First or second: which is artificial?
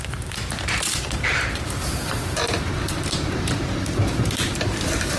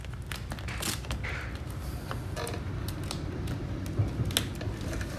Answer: first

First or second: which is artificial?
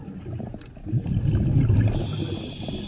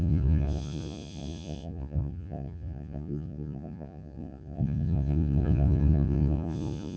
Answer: second